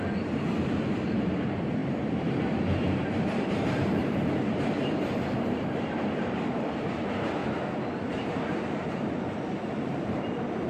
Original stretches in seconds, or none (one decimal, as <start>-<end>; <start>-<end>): 7.4-8.0